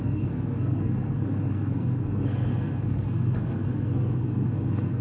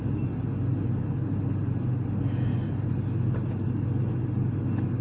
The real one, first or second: second